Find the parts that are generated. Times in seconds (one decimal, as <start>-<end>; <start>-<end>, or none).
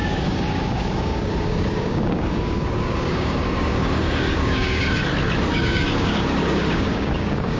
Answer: 0.0-5.0; 5.5-7.6